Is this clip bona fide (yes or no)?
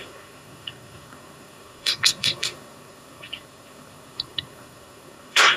no